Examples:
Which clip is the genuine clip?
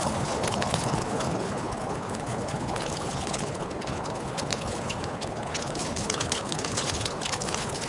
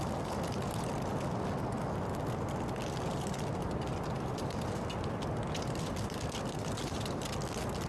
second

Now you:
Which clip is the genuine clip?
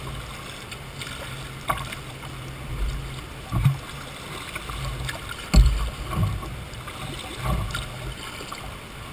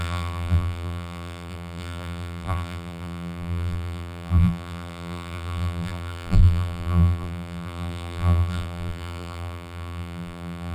first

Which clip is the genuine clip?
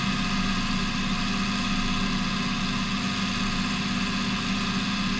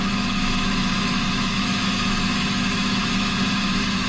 first